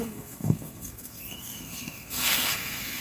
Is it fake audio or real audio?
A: fake